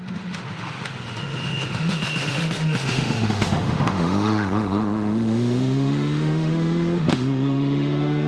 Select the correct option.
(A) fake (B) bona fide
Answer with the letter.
A